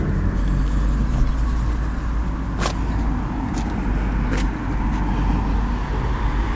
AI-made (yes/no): no